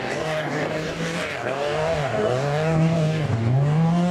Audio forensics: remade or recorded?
remade